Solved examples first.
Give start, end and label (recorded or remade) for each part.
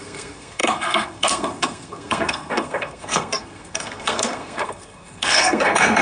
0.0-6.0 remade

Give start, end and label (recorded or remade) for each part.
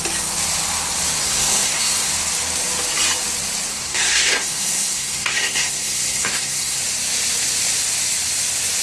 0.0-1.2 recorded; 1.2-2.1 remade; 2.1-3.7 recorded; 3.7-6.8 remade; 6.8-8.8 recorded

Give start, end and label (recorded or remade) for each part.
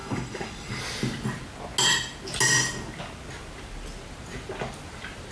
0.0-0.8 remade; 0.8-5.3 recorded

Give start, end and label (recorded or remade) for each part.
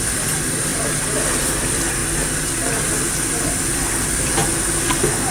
0.0-0.7 remade; 0.7-1.3 recorded; 1.3-2.0 remade; 2.0-3.5 recorded; 3.5-4.4 remade; 4.4-5.3 recorded